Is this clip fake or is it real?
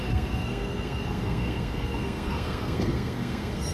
fake